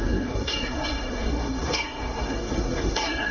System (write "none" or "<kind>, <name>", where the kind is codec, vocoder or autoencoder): codec, SNAC